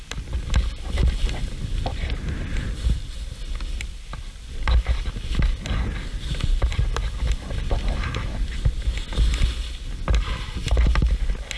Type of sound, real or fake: real